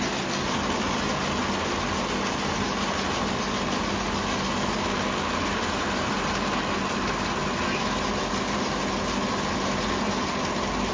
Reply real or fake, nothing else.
real